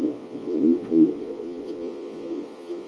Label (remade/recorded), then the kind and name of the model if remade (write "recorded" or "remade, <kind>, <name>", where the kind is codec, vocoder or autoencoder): remade, vocoder, Vocos